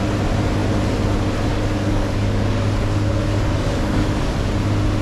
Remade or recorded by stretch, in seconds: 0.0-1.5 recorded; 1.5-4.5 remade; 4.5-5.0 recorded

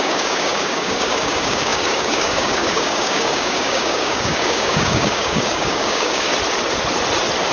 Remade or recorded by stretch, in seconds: 0.0-6.3 remade; 6.3-7.5 recorded

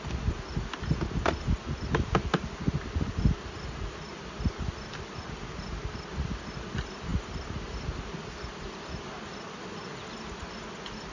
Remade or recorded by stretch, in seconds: 0.0-11.1 recorded

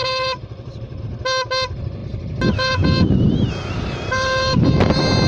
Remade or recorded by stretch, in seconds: 0.0-5.3 recorded

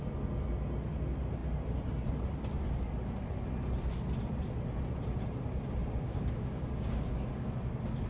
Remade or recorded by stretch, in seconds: 0.0-5.8 recorded; 5.8-7.5 remade; 7.5-8.1 recorded